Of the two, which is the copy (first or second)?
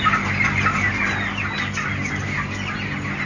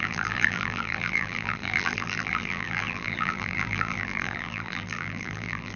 second